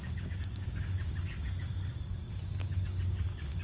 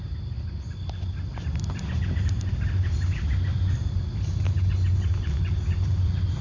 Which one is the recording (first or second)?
second